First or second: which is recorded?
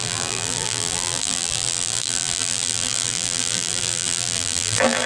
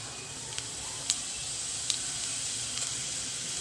second